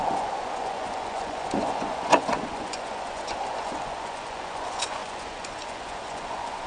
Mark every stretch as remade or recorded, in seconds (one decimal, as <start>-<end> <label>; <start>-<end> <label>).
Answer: 0.0-6.7 remade